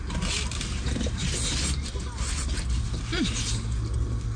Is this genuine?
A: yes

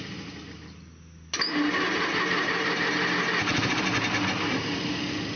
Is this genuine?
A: yes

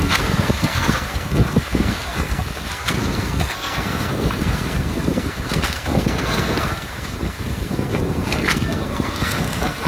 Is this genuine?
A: no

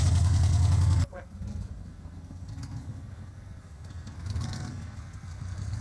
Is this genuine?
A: no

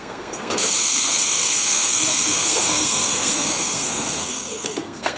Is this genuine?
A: no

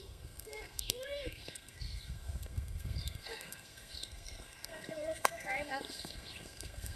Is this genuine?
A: no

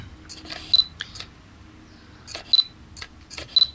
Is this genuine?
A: yes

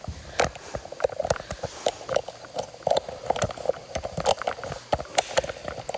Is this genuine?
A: yes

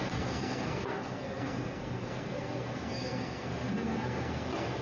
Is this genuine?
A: no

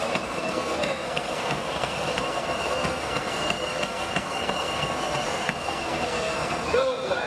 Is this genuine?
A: no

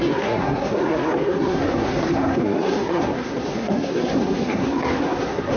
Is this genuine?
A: no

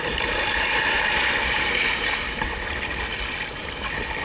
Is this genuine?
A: yes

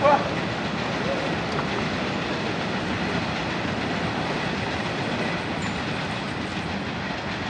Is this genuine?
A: yes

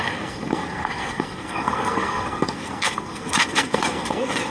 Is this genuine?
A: no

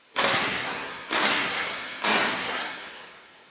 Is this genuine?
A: no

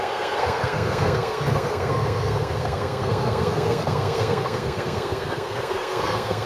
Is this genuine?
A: no